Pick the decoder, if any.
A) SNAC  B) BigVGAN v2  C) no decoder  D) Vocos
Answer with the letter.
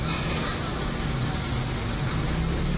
C